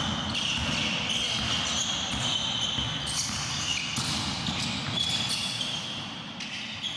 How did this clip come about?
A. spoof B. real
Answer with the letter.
B